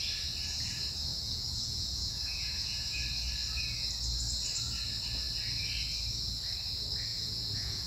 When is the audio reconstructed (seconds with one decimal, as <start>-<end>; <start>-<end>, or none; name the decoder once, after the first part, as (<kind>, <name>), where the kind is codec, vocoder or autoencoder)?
1.1-3.0 (vocoder, Vocos); 7.1-7.9